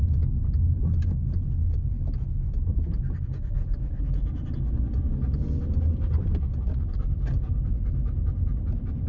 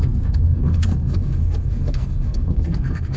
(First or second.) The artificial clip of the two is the second